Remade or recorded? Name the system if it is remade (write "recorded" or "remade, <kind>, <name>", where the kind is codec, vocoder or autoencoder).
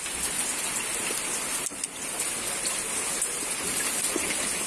recorded